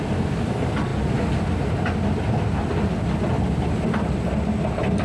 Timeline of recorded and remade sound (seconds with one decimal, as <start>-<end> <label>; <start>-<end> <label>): 0.0-5.0 recorded